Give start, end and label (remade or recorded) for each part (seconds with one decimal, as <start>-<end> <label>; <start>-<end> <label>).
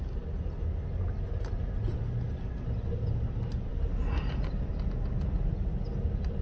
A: 0.0-6.4 recorded